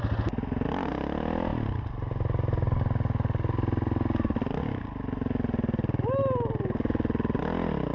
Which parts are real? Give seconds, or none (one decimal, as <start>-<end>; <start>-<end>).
0.0-7.9